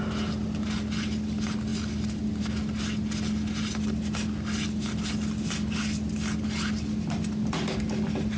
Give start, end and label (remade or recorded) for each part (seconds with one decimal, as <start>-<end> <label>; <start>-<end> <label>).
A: 0.0-8.4 recorded

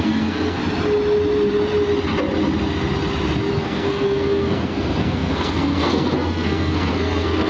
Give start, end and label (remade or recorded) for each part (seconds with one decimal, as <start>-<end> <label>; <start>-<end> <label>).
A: 0.0-0.6 remade; 0.6-3.5 recorded; 3.5-7.5 remade

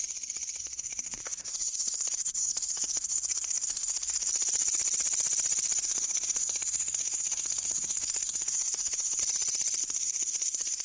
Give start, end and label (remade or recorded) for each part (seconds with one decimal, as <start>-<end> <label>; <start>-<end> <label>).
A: 0.0-0.6 recorded; 0.6-4.3 remade; 4.3-5.8 recorded; 5.8-9.2 remade; 9.2-9.8 recorded; 9.8-10.8 remade

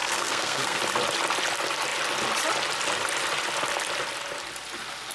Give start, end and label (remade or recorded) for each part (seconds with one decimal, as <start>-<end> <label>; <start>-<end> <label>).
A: 0.0-0.8 remade; 0.8-5.1 recorded

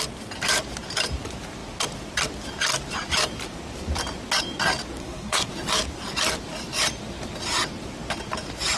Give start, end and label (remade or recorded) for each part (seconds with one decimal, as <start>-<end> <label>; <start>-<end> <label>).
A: 0.0-5.0 recorded; 5.0-5.5 remade; 5.5-8.8 recorded

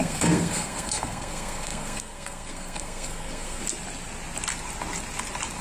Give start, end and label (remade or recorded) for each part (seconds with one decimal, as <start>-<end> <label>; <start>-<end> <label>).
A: 0.0-3.6 remade; 3.6-5.6 recorded

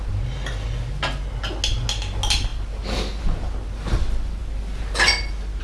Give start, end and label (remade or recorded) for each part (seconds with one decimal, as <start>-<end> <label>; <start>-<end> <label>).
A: 0.0-5.6 recorded